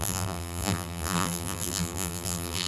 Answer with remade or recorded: remade